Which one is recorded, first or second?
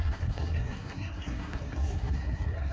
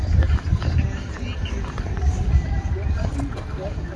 second